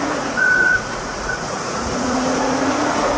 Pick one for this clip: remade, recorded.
remade